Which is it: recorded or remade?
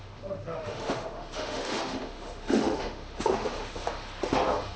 remade